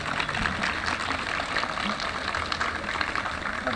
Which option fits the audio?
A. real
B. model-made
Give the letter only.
A